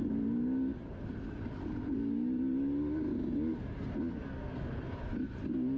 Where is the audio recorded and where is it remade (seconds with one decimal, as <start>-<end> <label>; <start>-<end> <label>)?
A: 0.0-5.8 recorded